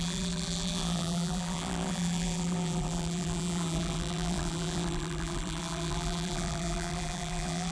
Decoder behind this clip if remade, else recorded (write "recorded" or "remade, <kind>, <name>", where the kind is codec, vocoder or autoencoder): remade, vocoder, BigVGAN v2